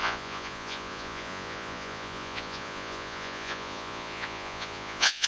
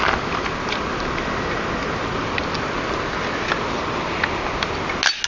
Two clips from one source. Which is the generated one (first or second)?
first